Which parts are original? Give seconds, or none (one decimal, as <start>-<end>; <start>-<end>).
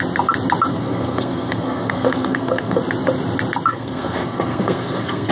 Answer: 0.0-0.7; 2.8-3.7